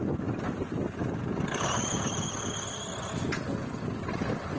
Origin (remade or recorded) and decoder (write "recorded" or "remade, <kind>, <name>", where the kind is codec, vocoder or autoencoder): recorded